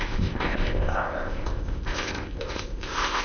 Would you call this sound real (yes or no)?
no